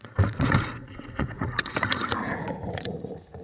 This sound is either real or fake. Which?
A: fake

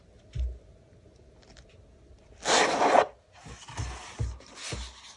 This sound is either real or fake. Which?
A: real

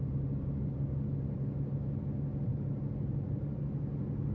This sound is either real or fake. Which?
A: real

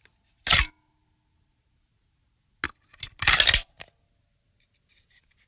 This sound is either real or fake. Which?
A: real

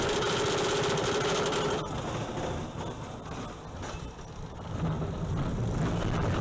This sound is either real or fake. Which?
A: real